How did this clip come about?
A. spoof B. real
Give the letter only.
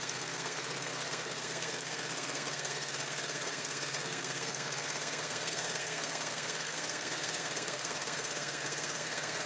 A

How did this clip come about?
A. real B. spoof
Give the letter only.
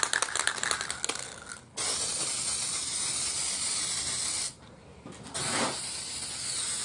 A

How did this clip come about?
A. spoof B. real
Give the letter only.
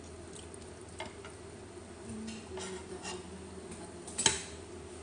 B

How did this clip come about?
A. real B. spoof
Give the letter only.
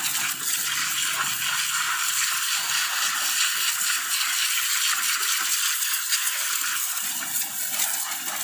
A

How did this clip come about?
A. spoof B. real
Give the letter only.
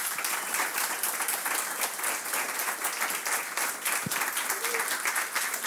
B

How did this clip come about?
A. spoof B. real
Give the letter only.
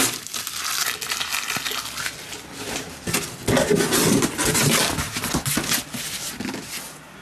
B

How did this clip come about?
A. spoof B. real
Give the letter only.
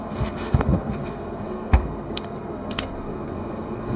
A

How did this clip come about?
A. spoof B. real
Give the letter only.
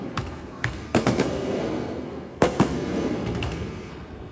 A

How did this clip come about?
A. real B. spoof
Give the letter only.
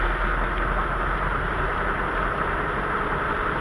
A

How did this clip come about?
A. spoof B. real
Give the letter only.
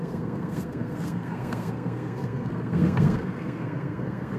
A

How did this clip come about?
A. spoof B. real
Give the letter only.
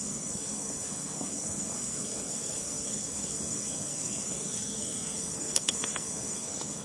A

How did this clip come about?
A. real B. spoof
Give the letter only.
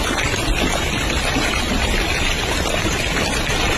A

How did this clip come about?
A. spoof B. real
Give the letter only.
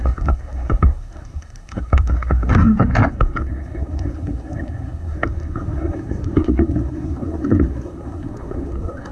A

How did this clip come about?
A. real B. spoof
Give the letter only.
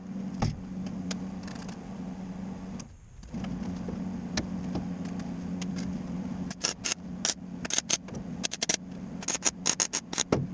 A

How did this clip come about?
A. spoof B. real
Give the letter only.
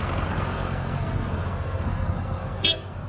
A